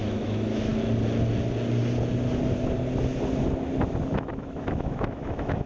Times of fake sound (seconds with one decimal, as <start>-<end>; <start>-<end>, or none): 0.0-0.7; 4.1-5.7